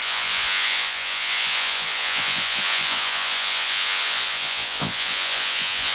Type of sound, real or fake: fake